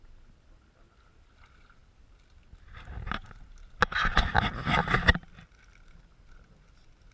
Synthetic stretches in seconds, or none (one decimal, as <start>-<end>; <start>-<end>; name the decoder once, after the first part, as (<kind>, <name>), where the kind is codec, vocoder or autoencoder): none